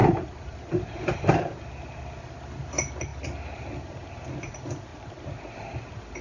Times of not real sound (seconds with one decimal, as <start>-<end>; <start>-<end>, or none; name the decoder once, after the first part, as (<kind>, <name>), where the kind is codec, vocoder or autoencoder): 0.0-2.0 (vocoder, BigVGAN v2); 4.9-6.2